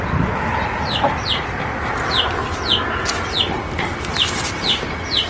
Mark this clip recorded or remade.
recorded